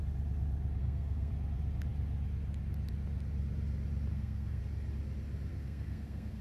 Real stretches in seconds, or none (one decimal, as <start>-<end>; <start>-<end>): 0.0-0.8; 1.3-4.1; 4.6-5.5

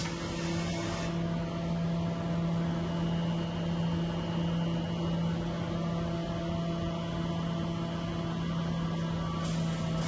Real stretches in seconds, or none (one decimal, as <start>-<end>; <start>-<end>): 0.0-10.1

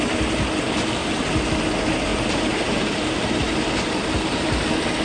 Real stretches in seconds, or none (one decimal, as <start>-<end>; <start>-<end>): 0.0-1.0; 1.5-2.1; 3.3-5.0